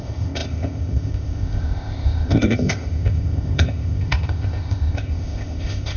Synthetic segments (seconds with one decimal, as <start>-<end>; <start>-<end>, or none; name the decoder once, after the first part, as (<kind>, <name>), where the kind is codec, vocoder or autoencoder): 0.0-6.0 (codec, ZipCodec)